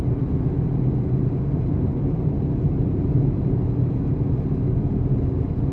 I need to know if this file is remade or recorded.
recorded